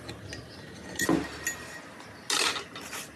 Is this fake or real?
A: real